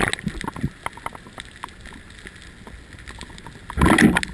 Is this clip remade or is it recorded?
recorded